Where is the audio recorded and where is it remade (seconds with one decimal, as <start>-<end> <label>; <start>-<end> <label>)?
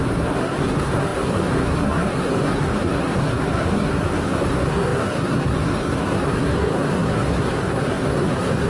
0.0-8.7 remade